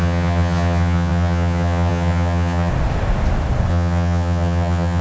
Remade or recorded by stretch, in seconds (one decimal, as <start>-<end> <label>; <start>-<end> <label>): 0.0-2.7 remade; 2.7-3.7 recorded; 3.7-5.0 remade